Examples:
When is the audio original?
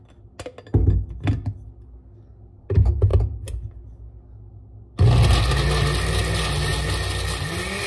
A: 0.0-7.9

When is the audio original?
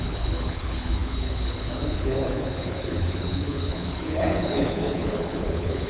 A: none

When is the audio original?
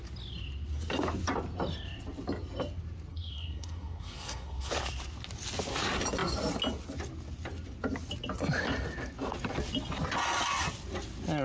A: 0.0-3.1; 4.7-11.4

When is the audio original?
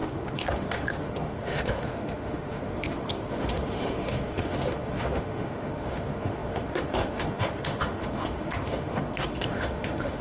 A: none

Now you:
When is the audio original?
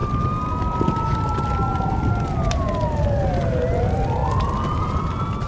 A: 0.0-5.5